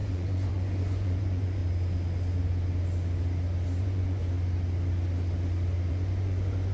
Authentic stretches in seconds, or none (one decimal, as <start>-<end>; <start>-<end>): 1.6-3.8; 4.2-5.9